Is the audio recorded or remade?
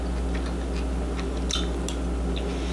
recorded